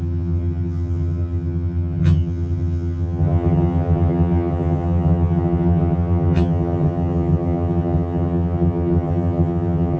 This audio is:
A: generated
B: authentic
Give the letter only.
A